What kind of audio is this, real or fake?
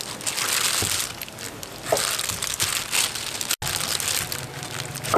real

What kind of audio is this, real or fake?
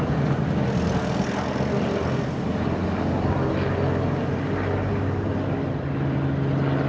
real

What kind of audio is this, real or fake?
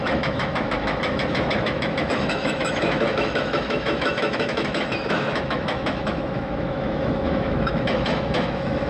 fake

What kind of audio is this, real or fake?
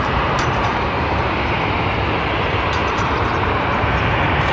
fake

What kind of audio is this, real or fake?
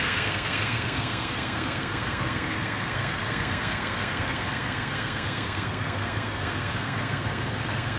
fake